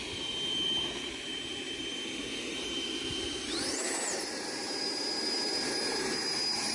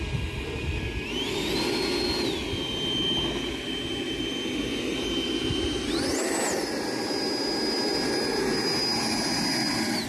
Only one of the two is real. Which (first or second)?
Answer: second